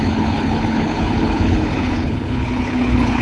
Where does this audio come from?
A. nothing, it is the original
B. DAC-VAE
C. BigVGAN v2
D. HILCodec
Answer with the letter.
D